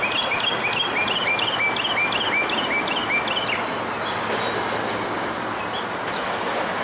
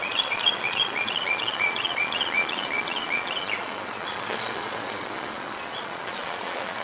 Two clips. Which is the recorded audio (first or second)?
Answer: first